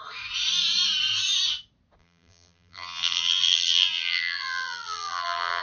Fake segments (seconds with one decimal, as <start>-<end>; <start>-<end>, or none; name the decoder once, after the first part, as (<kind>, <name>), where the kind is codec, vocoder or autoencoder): 2.0-5.6 (vocoder, BigVGAN v2)